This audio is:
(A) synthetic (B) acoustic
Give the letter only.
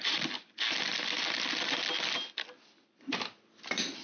B